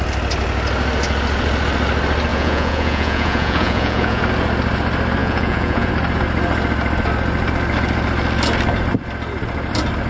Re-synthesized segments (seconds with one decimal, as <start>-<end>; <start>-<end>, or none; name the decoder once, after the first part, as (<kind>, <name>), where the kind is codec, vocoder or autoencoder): 2.3-4.2 (vocoder, Vocos); 5.2-5.9